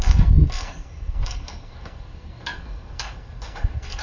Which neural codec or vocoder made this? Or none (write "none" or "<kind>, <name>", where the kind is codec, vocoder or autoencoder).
codec, SNAC